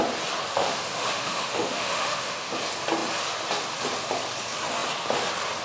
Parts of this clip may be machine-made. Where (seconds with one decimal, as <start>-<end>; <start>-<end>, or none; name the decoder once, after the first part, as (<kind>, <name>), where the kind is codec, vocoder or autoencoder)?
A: 0.5-2.5 (autoencoder, DAC-VAE)